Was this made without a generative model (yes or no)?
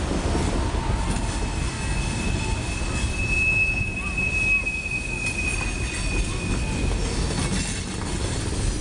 yes